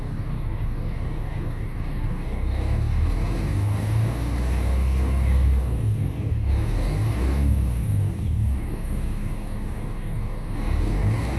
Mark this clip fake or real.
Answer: fake